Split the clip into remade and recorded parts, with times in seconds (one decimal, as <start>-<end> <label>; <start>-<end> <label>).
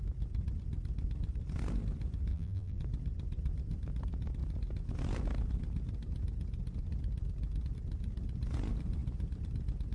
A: 0.0-2.3 recorded; 2.3-2.8 remade; 2.8-9.9 recorded